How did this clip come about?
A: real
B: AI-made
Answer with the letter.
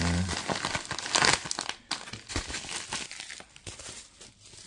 A